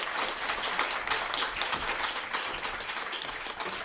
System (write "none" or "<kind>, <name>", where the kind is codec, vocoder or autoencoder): none